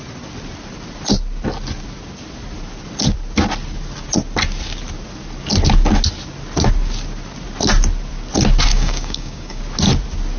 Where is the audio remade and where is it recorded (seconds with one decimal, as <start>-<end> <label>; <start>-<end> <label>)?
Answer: 0.0-8.7 recorded; 8.7-9.6 remade; 9.6-10.4 recorded

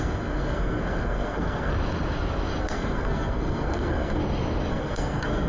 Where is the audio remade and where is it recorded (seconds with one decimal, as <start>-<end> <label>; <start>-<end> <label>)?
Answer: 0.0-1.7 remade; 1.7-2.6 recorded; 2.6-4.2 remade; 4.2-4.7 recorded; 4.7-5.5 remade